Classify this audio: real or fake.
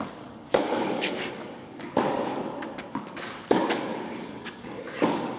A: fake